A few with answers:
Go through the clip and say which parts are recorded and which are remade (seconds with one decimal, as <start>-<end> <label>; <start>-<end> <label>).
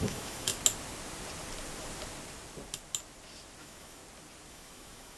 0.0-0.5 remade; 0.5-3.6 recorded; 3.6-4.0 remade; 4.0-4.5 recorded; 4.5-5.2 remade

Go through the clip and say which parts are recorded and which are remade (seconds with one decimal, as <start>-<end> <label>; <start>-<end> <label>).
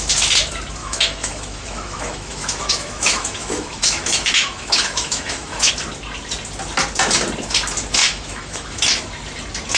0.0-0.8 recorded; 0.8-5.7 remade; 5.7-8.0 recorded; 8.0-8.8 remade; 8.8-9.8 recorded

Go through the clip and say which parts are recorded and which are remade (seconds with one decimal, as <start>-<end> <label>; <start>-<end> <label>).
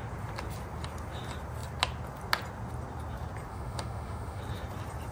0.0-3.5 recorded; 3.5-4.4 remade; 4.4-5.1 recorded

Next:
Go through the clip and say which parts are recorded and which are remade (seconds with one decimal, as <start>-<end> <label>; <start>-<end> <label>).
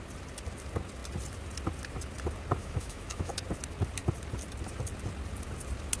0.0-2.6 recorded; 2.6-3.3 remade; 3.3-6.0 recorded